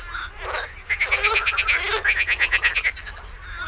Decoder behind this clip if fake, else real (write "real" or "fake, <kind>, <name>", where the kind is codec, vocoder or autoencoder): real